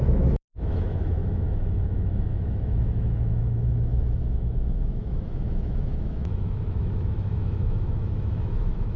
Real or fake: fake